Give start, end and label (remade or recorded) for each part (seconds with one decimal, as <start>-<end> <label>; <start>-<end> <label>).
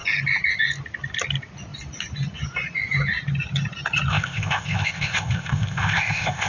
0.0-4.1 recorded; 4.1-6.5 remade